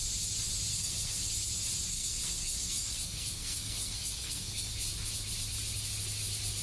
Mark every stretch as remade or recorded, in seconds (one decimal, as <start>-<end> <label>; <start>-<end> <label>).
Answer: 0.0-0.7 recorded; 0.7-1.3 remade; 1.3-1.9 recorded; 1.9-4.7 remade; 4.7-6.6 recorded